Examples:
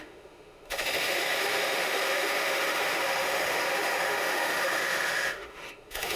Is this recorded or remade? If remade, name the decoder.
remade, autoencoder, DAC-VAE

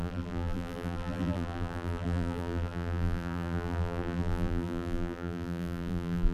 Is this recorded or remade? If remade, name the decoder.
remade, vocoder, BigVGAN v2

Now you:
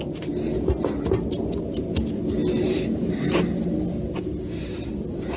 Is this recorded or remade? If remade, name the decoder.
recorded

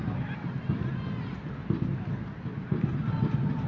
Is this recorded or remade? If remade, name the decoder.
remade, vocoder, BigVGAN v2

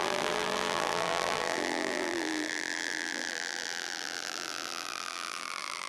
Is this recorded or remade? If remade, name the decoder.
remade, vocoder, BigVGAN v2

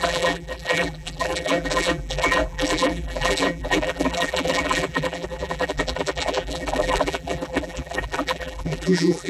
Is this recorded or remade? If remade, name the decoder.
remade, vocoder, BigVGAN v2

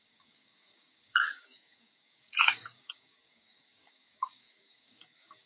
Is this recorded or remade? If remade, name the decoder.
remade, codec, DAC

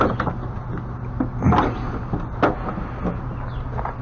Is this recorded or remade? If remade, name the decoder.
recorded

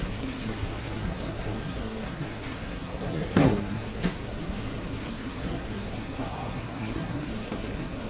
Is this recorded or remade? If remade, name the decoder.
remade, codec, SNAC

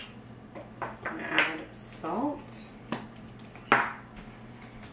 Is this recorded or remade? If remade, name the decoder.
recorded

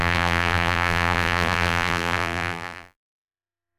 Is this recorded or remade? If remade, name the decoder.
remade, vocoder, BigVGAN v2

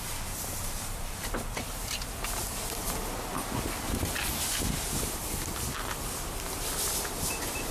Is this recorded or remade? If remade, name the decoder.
recorded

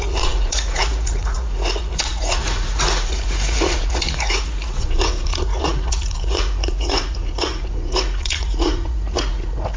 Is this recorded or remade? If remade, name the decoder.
remade, vocoder, Vocos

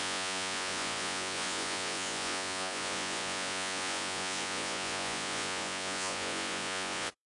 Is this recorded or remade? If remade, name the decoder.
remade, vocoder, Vocos